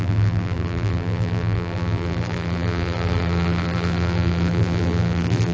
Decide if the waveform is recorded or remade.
remade